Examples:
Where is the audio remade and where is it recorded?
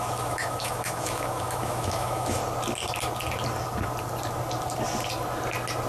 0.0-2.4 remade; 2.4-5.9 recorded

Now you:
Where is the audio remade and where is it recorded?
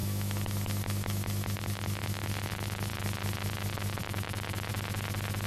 0.0-2.9 remade; 2.9-4.0 recorded; 4.0-4.7 remade; 4.7-5.5 recorded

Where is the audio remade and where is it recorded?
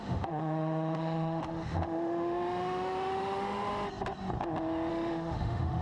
0.0-3.7 remade; 3.7-4.9 recorded; 4.9-5.8 remade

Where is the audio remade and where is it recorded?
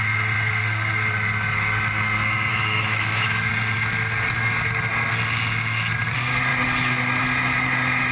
0.0-2.5 recorded; 2.5-3.5 remade; 3.5-8.1 recorded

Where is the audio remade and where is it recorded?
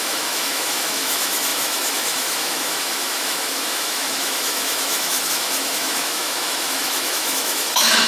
0.0-8.1 remade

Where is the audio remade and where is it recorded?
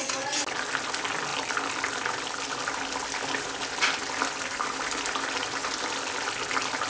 0.0-6.9 recorded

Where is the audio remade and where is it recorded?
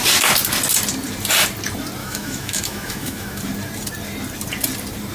0.0-2.0 recorded; 2.0-3.4 remade; 3.4-5.1 recorded